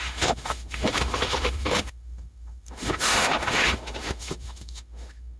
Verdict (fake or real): fake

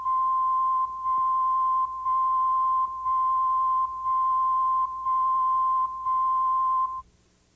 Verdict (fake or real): real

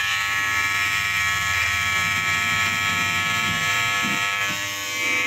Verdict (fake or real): fake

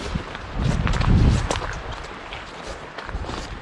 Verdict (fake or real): real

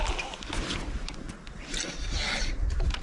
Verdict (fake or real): real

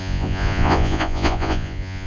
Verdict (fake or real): fake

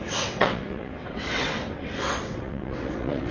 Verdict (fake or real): fake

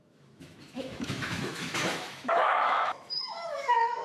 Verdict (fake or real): fake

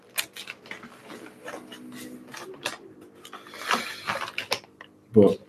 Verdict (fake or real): real